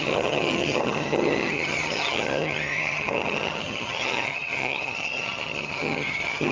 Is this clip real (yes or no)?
no